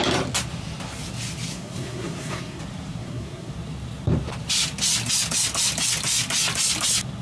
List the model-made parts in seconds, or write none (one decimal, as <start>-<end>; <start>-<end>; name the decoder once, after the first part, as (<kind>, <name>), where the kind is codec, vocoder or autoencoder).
1.5-2.6 (codec, SNAC); 3.0-3.5